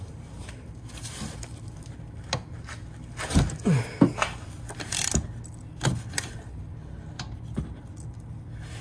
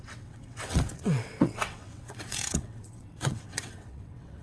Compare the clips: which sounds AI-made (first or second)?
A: second